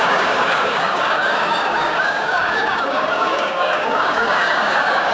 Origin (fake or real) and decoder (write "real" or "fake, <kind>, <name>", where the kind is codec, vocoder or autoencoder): fake, codec, DAC